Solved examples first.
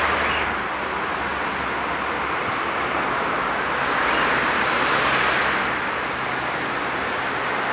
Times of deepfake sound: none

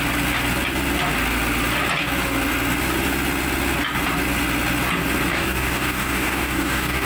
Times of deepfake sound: 5.3-7.1

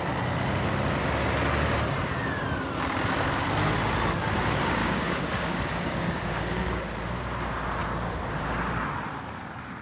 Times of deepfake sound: 4.8-6.8

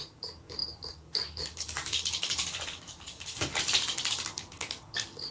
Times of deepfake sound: 0.0-3.5; 4.1-5.3

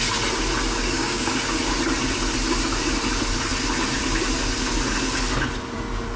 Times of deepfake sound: 0.8-1.3